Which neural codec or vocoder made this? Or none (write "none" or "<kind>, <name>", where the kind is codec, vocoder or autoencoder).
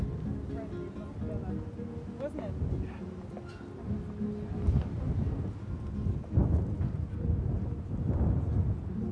none